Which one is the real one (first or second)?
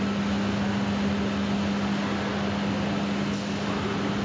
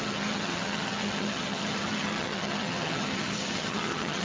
first